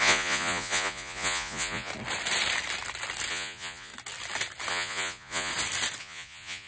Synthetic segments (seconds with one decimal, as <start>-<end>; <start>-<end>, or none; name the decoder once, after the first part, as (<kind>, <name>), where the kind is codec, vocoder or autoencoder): 0.0-1.9 (vocoder, Vocos); 3.3-3.9; 4.7-5.5; 6.0-6.7